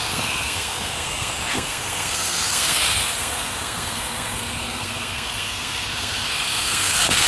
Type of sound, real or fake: fake